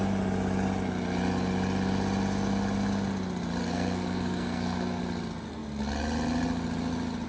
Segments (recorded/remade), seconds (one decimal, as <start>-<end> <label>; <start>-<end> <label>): 0.0-3.6 recorded; 3.6-5.0 remade; 5.0-7.3 recorded